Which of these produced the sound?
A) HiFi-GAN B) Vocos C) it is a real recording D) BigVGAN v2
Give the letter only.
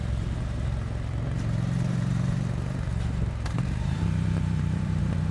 D